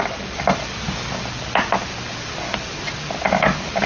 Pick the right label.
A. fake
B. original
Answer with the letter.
B